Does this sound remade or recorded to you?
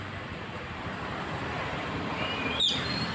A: remade